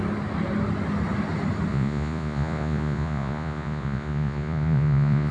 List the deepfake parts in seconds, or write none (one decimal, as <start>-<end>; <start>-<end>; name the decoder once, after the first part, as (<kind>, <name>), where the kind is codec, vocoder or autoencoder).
1.7-5.3 (vocoder, Vocos)